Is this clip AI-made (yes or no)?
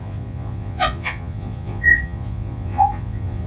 yes